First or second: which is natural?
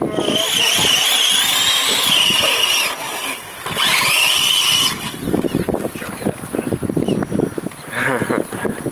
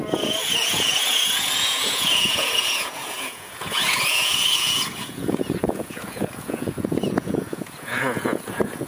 first